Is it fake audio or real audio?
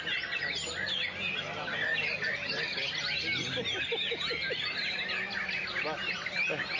real